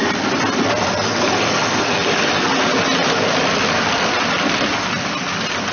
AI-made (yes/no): no